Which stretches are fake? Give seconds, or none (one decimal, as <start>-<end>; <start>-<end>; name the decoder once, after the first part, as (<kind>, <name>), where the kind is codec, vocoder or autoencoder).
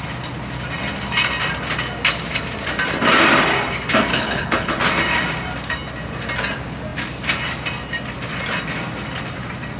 4.1-4.8 (codec, HILCodec)